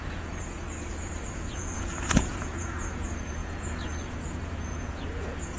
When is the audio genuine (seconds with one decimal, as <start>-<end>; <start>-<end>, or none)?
none

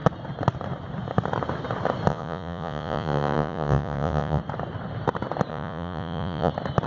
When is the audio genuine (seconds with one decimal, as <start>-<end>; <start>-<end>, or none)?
0.0-2.1; 4.4-5.5; 6.5-6.9

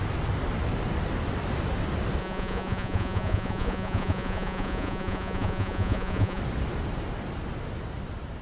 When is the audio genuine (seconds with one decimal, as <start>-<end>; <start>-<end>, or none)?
0.0-2.2; 6.4-8.4

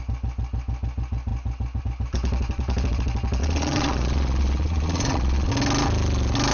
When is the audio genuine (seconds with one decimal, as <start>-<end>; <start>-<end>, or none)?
0.0-3.4; 5.5-6.5